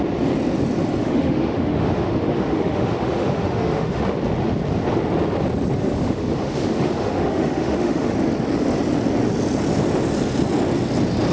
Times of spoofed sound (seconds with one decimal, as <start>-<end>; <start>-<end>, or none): 1.0-4.0; 5.8-8.1